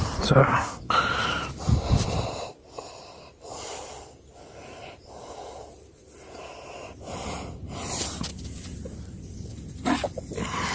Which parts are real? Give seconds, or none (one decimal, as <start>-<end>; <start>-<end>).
0.0-0.4; 0.9-10.7